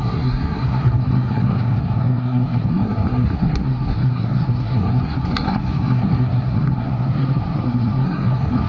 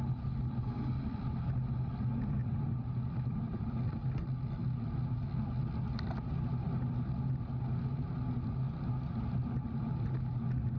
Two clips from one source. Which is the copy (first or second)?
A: first